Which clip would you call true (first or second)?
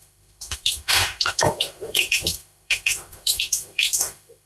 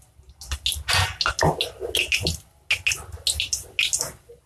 second